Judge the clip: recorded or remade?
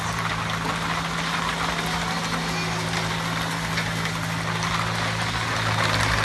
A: recorded